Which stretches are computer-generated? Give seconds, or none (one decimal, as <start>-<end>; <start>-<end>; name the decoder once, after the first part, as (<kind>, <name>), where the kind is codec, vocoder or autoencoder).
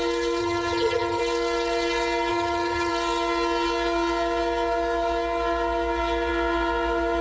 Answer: 0.4-1.2 (vocoder, HiFi-GAN); 2.3-2.9